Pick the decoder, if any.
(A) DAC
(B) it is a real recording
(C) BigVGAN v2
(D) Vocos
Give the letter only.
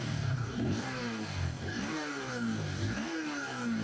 A